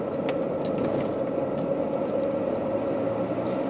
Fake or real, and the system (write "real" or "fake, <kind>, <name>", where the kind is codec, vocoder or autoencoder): real